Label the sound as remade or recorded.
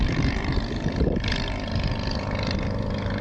remade